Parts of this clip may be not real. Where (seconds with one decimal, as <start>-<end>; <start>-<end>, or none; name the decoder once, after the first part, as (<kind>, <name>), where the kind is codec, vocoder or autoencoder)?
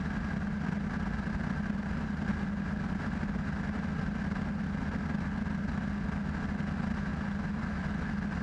none